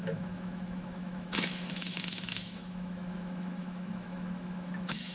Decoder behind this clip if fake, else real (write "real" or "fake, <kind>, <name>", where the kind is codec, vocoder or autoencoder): fake, autoencoder, DAC-VAE